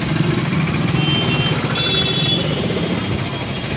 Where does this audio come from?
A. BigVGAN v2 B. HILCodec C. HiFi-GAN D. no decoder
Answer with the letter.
D